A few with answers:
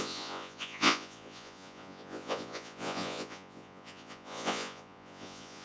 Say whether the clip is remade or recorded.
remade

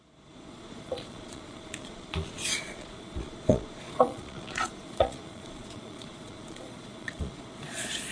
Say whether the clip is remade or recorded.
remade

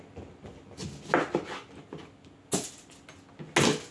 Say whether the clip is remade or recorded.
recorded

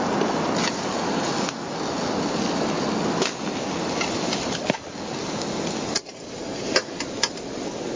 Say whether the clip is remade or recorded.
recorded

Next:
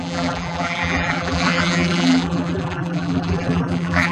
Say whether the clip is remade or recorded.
remade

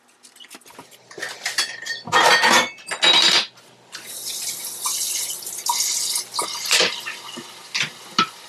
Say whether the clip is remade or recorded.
recorded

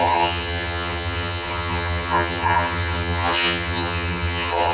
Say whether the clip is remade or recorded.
remade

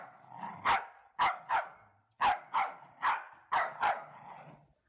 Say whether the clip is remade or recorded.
recorded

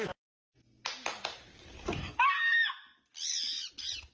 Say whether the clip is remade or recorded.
recorded